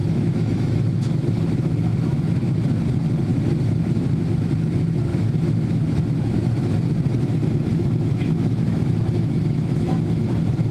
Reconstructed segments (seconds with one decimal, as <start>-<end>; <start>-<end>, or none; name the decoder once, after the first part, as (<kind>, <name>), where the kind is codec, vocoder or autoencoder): 0.0-2.4 (autoencoder, DAC-VAE); 3.3-4.5; 5.1-6.9; 7.7-10.2